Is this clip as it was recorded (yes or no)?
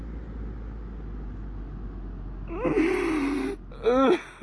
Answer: yes